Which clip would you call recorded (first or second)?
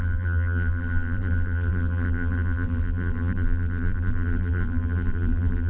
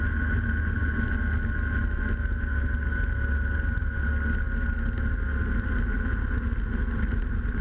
second